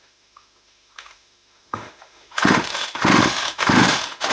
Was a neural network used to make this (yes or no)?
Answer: yes